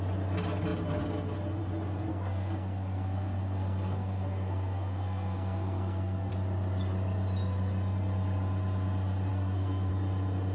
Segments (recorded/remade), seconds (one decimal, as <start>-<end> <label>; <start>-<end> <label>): 0.0-2.1 recorded; 2.1-6.3 remade; 6.3-9.3 recorded; 9.3-9.9 remade; 9.9-10.5 recorded

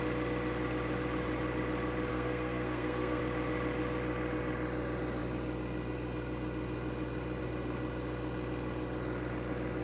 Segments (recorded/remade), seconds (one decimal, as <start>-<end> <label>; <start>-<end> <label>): 0.0-2.1 recorded; 2.1-3.2 remade; 3.2-9.8 recorded

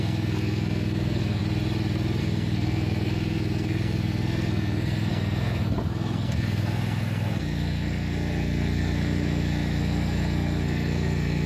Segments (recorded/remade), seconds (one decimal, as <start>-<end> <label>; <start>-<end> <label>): 0.0-1.4 remade; 1.4-2.2 recorded; 2.2-11.5 remade

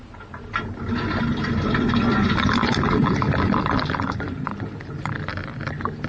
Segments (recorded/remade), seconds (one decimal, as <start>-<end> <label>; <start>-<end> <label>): 0.0-6.1 recorded

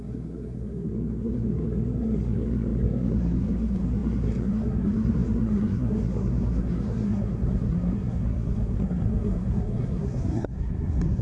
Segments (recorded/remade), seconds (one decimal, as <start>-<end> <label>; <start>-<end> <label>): 0.0-11.2 remade